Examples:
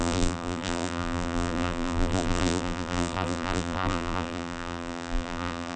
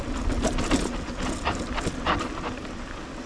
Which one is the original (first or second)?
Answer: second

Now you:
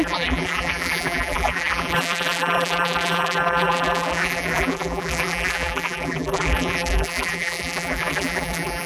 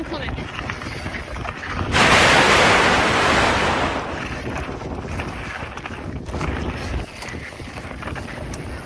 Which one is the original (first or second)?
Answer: second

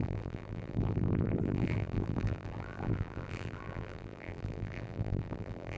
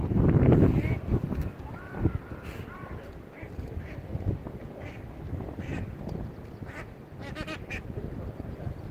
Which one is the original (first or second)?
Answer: second